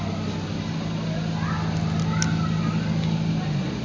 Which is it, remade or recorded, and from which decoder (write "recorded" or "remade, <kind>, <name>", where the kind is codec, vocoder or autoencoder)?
recorded